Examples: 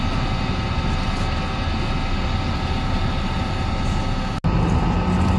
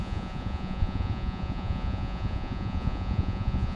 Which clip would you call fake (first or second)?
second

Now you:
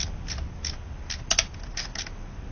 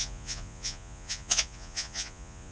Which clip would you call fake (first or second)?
second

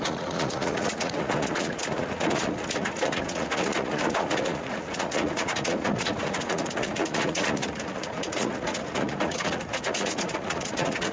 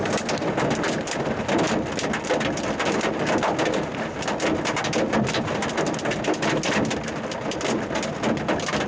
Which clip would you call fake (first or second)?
first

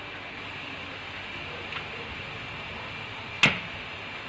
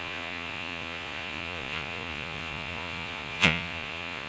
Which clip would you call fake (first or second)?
second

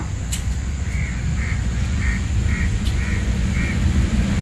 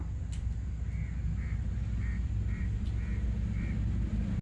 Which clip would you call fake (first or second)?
first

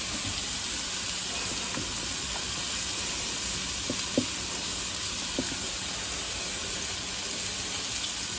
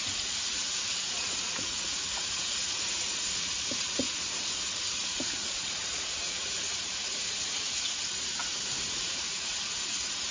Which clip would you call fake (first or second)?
second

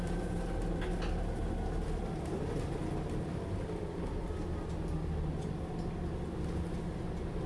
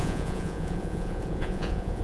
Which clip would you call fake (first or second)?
second